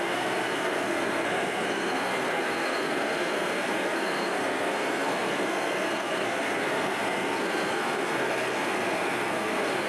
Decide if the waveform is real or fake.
fake